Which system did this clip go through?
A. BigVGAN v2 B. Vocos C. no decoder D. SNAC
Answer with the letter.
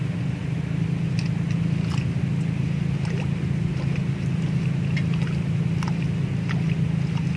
C